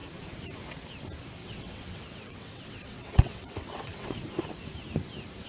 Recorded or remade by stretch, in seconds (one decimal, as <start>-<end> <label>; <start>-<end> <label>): 0.0-1.4 recorded; 1.4-4.1 remade; 4.1-5.5 recorded